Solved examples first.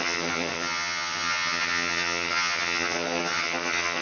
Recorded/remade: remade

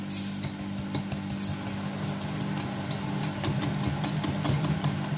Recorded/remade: recorded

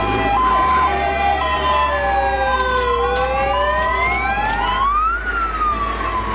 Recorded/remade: recorded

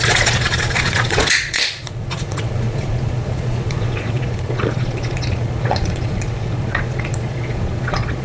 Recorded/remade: remade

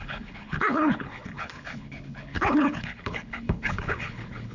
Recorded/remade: remade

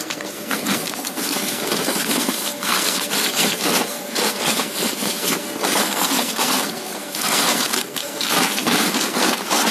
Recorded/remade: remade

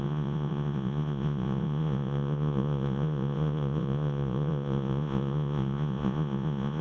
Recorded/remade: remade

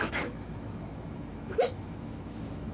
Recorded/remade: remade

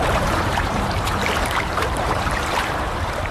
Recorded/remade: remade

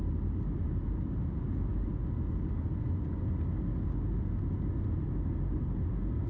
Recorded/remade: recorded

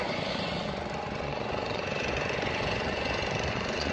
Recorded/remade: remade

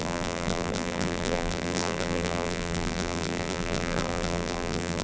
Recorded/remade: remade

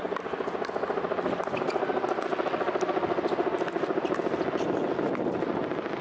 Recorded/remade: recorded